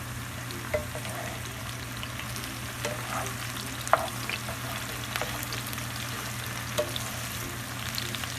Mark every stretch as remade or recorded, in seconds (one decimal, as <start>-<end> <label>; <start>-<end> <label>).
0.0-8.4 recorded